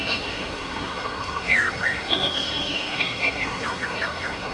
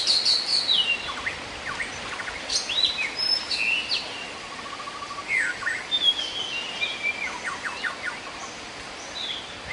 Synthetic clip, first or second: first